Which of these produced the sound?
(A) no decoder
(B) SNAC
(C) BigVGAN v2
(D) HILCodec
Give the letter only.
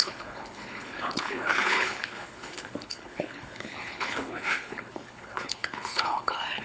D